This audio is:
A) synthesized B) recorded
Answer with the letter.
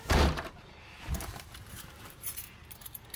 A